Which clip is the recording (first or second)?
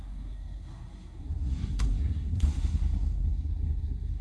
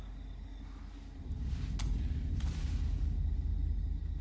second